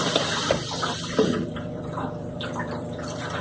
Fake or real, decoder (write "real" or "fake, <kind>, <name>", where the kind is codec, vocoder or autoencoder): fake, vocoder, BigVGAN v2